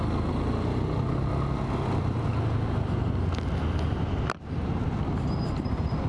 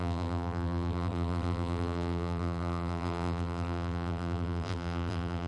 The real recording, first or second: first